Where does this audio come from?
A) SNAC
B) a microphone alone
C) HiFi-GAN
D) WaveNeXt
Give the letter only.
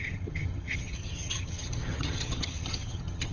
C